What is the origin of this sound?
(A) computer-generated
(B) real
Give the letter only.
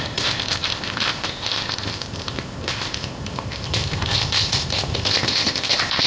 A